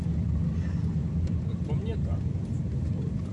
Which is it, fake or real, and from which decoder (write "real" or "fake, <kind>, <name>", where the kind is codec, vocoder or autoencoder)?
real